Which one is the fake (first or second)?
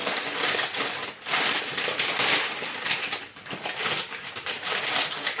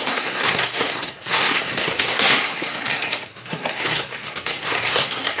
second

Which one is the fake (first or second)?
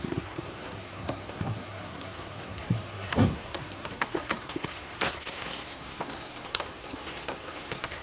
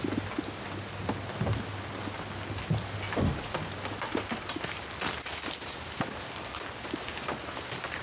first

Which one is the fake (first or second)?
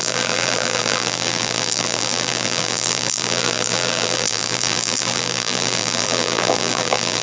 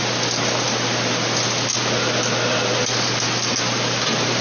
first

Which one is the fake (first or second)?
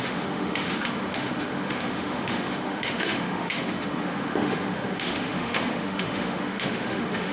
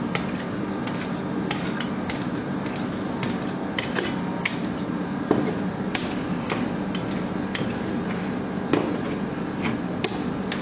first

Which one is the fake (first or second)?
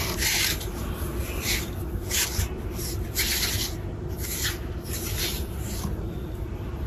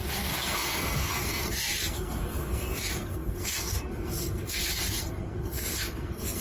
second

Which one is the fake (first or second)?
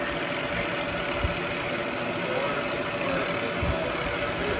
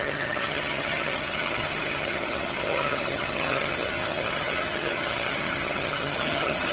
second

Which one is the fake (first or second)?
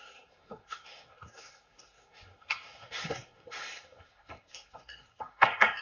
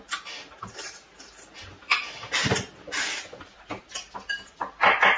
first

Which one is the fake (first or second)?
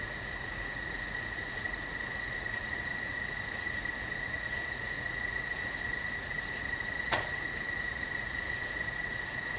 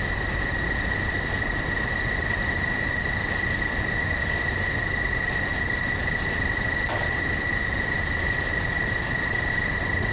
first